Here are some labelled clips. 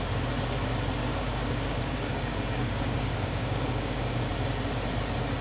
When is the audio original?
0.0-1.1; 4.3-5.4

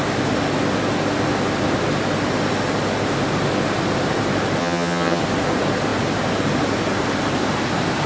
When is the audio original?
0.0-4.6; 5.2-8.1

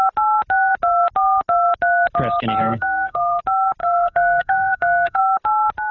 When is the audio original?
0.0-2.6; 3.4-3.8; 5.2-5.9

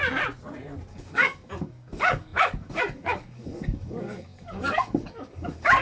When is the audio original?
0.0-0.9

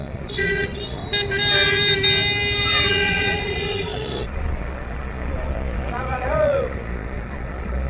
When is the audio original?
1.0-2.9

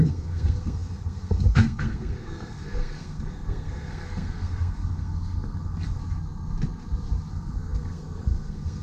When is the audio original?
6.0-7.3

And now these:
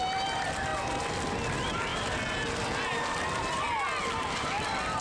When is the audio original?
0.0-5.0